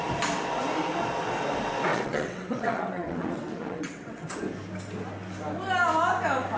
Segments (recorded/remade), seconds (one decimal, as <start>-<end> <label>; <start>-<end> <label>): 0.0-1.9 recorded; 1.9-4.4 remade; 4.4-6.6 recorded